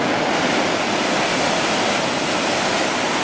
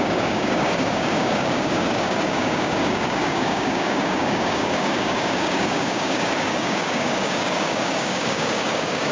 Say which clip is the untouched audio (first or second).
first